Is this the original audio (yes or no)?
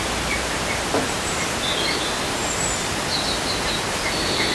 yes